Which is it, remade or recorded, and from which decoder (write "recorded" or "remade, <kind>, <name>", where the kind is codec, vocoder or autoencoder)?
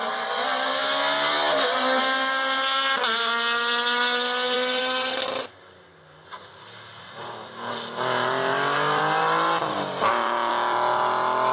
recorded